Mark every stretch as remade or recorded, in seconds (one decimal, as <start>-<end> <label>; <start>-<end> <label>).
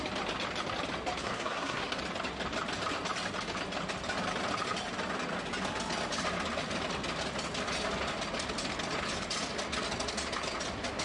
0.0-1.2 recorded; 1.2-2.0 remade; 2.0-11.0 recorded